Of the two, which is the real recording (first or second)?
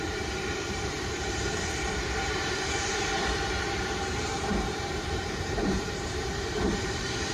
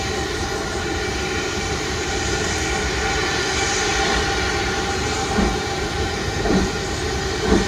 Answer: second